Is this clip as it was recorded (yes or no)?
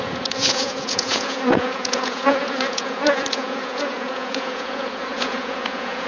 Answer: no